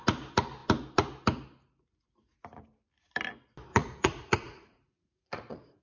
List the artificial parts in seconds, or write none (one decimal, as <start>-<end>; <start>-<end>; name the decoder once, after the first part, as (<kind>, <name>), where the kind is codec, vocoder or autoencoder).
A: 3.7-5.8 (vocoder, Vocos)